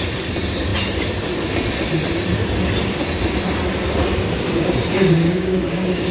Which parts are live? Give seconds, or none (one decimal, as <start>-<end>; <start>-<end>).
0.0-5.2